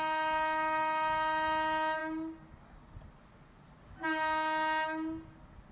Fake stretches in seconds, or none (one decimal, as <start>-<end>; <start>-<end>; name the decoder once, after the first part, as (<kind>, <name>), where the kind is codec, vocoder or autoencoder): none